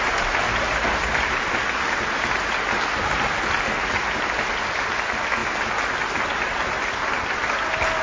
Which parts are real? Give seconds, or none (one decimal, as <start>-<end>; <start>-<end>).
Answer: 0.0-8.0